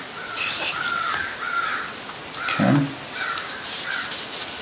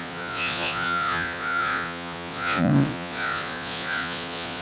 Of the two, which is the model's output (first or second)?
second